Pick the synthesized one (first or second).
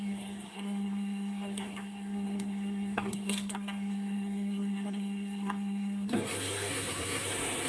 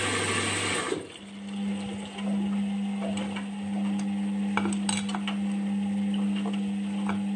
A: first